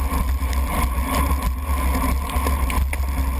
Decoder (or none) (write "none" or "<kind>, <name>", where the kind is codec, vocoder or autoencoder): none